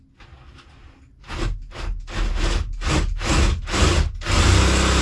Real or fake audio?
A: real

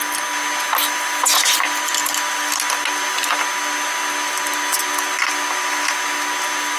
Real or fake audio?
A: real